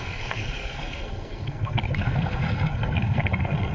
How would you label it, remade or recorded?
remade